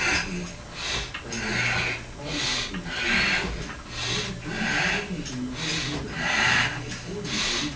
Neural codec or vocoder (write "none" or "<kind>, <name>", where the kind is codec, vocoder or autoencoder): none